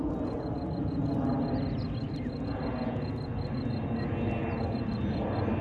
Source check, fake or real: real